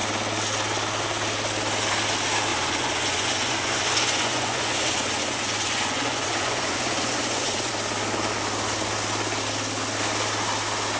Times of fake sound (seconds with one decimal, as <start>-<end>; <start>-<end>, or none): 2.5-7.7